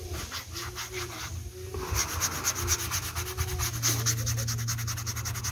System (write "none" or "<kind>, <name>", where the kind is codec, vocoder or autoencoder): none